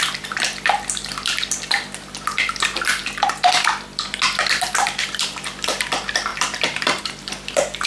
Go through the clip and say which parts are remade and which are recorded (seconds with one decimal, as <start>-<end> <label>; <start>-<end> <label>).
0.0-3.0 remade; 3.0-4.6 recorded; 4.6-7.9 remade